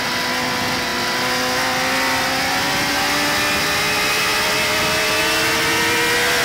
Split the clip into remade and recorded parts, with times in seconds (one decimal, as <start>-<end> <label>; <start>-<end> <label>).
0.0-6.4 recorded